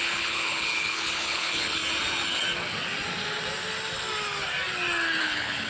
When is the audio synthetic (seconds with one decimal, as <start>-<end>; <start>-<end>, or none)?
0.0-1.8; 5.2-5.7